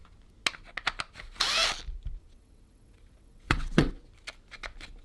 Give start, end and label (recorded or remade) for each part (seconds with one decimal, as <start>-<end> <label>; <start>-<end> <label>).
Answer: 0.0-2.2 recorded; 2.2-3.9 remade; 3.9-5.0 recorded